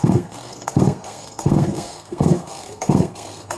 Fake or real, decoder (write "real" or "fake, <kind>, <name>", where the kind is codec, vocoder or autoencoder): fake, codec, SNAC